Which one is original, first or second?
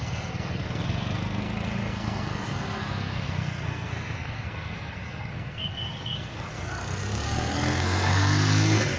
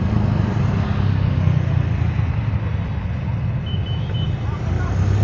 second